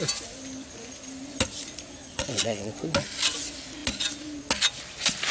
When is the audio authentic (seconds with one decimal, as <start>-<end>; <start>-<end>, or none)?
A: 0.0-2.0; 2.7-5.3